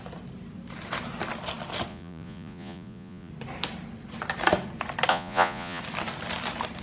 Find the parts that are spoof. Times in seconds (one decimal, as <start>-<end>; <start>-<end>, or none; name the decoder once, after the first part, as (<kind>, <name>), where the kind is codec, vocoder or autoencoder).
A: 1.9-3.3 (vocoder, Vocos); 5.1-5.8